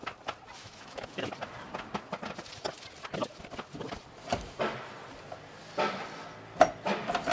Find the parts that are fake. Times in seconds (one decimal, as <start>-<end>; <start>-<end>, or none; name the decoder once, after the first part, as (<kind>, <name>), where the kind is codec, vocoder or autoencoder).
0.6-1.3 (autoencoder, DAC-VAE)